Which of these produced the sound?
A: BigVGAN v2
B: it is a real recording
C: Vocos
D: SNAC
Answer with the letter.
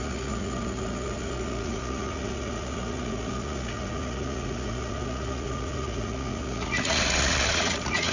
C